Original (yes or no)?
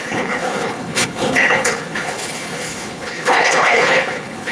no